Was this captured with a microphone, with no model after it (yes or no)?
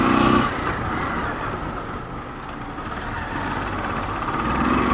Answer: yes